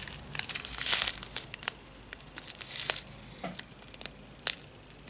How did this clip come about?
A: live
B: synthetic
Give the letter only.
A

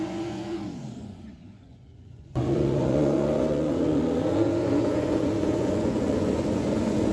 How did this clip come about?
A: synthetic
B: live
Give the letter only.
A